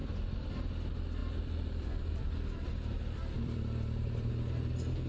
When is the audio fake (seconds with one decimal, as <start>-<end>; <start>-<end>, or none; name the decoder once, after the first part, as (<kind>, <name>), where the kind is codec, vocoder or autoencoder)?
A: 1.2-4.3 (vocoder, BigVGAN v2)